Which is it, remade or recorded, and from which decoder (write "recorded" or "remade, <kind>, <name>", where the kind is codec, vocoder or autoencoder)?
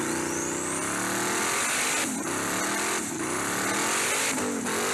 recorded